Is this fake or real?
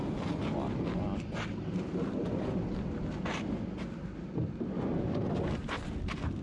real